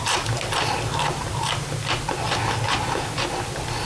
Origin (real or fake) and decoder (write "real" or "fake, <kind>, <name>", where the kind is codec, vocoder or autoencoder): fake, vocoder, BigVGAN v2